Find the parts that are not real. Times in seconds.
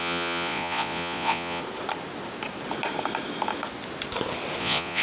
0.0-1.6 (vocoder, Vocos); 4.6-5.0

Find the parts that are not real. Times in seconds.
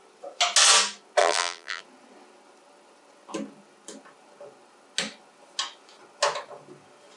1.2-1.8 (vocoder, BigVGAN v2)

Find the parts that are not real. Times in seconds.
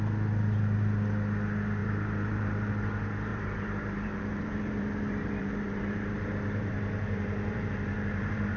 1.8-2.7 (vocoder, BigVGAN v2); 3.3-8.6